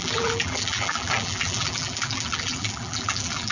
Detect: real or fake fake